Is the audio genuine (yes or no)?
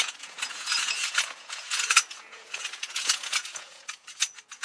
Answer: no